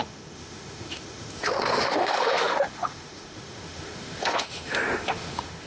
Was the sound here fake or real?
fake